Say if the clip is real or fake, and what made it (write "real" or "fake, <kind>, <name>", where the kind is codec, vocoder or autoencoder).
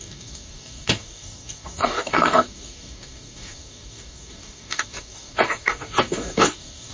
fake, codec, DAC